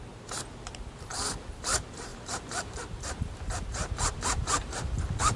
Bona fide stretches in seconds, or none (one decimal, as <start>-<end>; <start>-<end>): 0.0-2.1